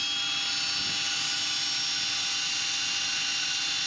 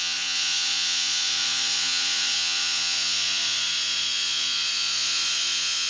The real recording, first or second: first